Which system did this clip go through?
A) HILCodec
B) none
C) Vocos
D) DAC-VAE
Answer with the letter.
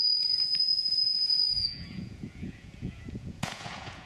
C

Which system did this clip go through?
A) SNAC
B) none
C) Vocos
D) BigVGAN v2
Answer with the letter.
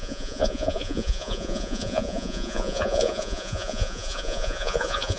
C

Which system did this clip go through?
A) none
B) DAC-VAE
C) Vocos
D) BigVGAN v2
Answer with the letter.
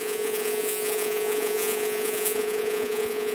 C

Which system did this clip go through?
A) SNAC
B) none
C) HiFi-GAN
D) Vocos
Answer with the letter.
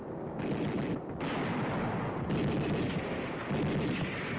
B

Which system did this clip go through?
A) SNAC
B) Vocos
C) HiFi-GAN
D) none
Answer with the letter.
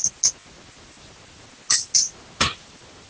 D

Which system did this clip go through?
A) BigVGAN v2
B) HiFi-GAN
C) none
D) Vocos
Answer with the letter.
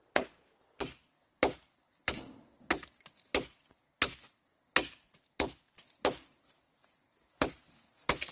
C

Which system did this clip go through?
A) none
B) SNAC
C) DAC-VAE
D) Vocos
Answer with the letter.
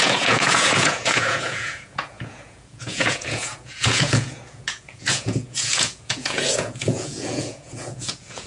D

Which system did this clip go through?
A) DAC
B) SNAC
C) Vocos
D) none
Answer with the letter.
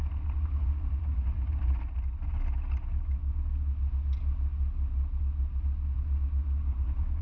D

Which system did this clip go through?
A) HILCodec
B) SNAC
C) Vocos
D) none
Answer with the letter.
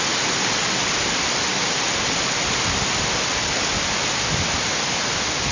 D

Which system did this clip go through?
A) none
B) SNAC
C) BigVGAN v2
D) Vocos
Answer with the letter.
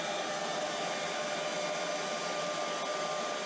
A